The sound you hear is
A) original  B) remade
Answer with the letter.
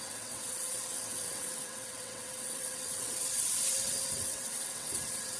B